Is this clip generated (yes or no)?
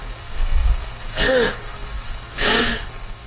yes